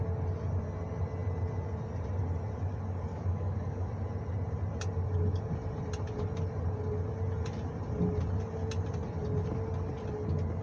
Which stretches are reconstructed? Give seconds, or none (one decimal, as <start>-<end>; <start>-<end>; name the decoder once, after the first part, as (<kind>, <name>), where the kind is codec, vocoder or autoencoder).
3.1-3.9 (codec, DAC)